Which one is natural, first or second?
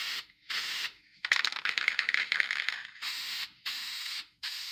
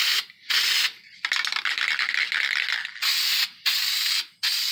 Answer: second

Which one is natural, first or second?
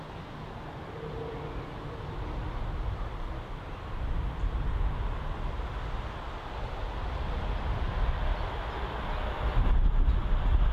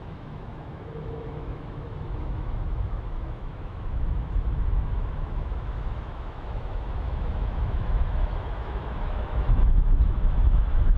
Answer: first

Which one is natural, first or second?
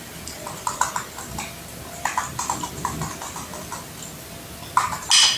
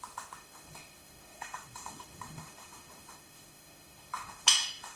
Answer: first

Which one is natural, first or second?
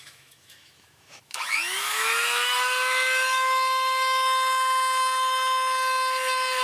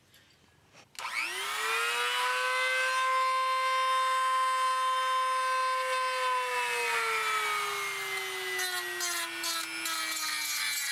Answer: second